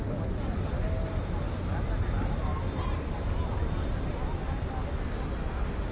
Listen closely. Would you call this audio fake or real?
real